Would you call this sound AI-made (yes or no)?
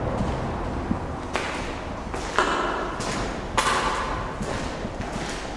no